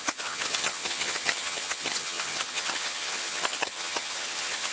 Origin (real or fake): fake